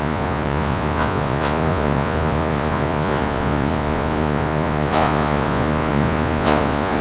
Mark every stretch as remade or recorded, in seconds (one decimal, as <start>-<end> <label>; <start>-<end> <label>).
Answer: 0.0-7.0 remade